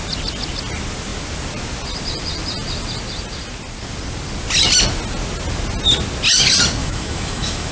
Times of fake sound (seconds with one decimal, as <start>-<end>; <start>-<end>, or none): 6.8-7.7